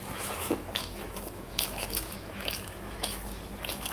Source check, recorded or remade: remade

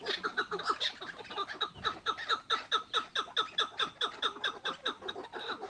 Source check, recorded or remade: recorded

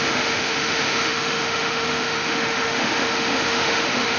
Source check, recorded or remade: remade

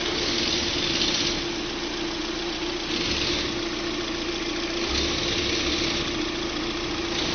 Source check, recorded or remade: recorded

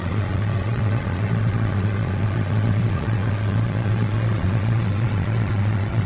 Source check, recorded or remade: remade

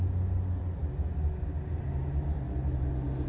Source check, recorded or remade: recorded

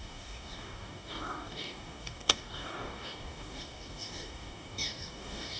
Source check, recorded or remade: remade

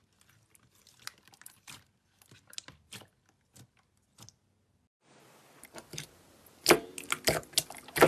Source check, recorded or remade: recorded